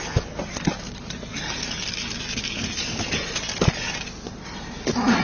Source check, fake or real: real